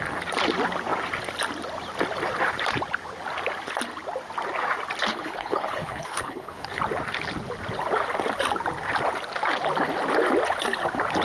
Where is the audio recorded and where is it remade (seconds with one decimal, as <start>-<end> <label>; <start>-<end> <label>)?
0.0-5.1 recorded; 5.1-6.8 remade; 6.8-11.2 recorded